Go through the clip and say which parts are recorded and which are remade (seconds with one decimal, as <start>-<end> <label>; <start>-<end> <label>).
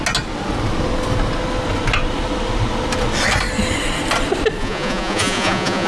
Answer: 0.0-4.6 recorded; 4.6-5.9 remade